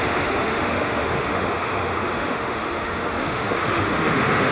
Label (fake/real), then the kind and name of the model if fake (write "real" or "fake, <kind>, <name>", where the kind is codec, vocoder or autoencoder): fake, autoencoder, DAC-VAE